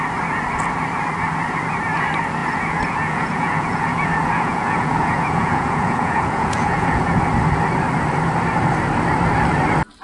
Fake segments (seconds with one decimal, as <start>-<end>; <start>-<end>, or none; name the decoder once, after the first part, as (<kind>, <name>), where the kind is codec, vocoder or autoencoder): 2.4-7.2 (vocoder, Vocos)